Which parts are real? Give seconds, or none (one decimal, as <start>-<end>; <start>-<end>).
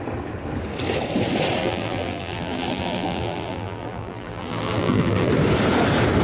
0.0-1.6; 5.3-6.2